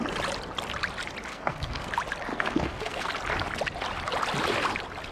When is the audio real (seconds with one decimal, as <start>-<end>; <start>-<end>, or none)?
0.0-1.3; 1.9-2.3; 3.1-5.1